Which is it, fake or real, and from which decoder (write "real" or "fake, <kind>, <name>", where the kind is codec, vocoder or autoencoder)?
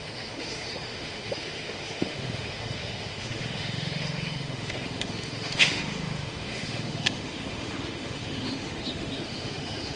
fake, autoencoder, DAC-VAE